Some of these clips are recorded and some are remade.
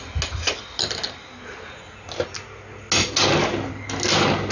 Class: recorded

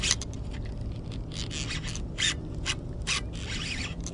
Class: recorded